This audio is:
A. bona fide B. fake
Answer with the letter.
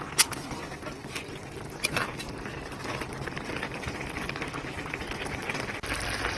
A